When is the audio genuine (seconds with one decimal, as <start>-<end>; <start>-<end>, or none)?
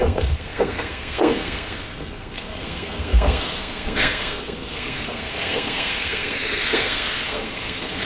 none